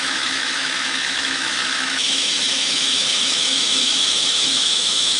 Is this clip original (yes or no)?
no